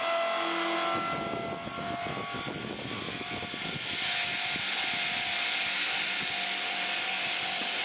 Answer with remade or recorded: recorded